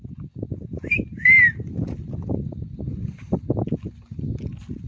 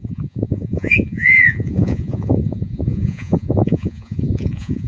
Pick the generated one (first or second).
second